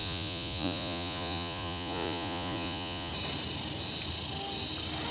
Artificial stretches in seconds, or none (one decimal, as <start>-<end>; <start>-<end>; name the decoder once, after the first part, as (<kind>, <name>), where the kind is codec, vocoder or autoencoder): 0.0-3.1 (vocoder, Vocos)